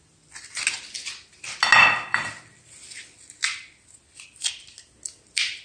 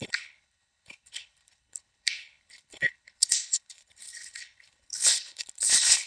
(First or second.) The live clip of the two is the first